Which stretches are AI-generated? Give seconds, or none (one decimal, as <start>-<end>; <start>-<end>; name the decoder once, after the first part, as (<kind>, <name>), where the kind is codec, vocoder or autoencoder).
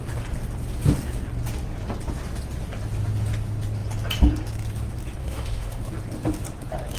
5.2-5.8 (autoencoder, DAC-VAE)